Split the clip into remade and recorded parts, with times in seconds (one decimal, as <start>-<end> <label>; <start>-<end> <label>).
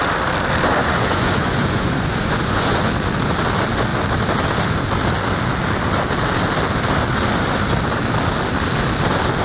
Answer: 0.0-0.8 recorded; 0.8-2.9 remade; 2.9-9.4 recorded